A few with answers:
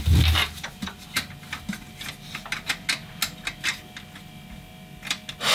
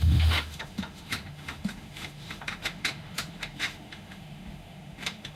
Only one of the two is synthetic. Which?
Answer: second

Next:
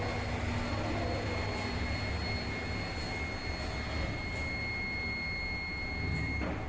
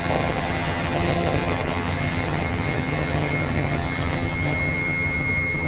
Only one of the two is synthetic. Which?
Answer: second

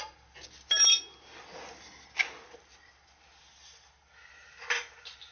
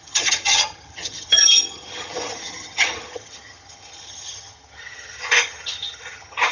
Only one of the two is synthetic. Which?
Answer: second